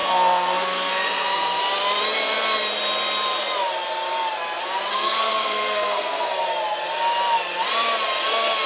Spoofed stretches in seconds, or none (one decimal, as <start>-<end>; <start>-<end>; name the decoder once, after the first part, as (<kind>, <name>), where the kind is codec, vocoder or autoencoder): 0.0-1.6 (codec, SNAC); 4.9-6.3